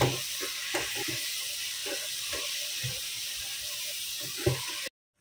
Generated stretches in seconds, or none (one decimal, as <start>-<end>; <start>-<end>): none